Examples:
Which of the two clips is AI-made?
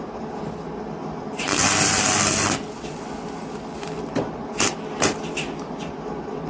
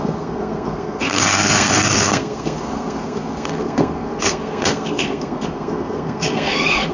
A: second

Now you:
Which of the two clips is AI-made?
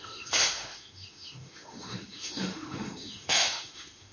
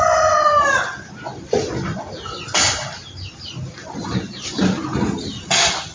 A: first